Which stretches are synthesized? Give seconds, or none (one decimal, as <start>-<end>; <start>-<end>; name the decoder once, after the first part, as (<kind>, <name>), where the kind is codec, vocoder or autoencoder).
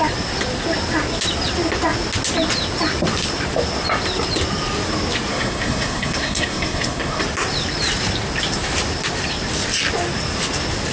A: 5.3-7.2 (codec, SNAC)